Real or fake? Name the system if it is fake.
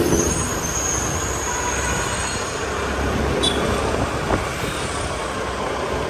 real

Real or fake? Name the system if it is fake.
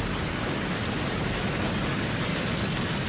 real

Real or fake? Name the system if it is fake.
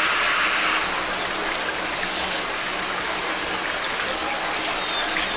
real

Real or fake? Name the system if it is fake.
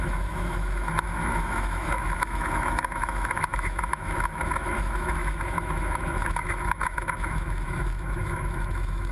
fake, autoencoder, DAC-VAE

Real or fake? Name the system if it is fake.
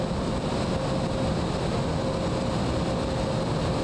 real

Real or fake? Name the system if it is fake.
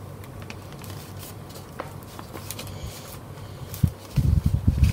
real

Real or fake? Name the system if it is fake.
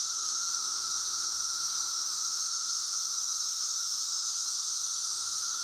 fake, autoencoder, DAC-VAE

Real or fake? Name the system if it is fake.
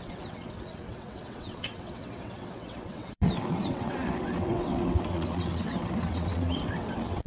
fake, vocoder, WaveNeXt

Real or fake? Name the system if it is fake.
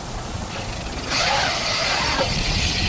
fake, vocoder, Vocos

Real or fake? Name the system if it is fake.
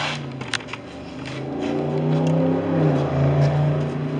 real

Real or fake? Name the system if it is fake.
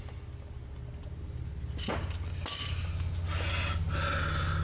real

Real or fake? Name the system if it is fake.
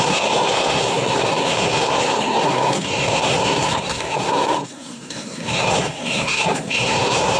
fake, codec, SNAC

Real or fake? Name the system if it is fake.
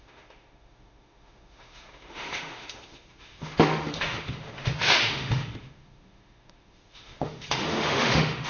fake, autoencoder, DAC-VAE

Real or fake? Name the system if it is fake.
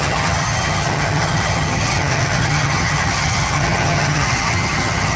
fake, vocoder, HiFi-GAN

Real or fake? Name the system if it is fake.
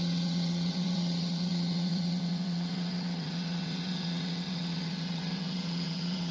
fake, vocoder, WaveNeXt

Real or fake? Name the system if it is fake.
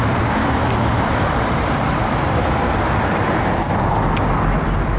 fake, vocoder, BigVGAN v2